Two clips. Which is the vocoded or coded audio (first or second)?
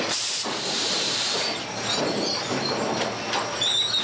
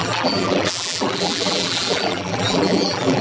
second